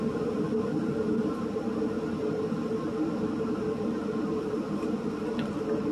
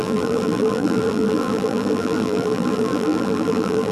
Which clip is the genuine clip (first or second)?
first